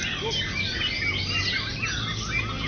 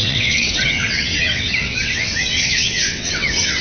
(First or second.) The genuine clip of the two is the first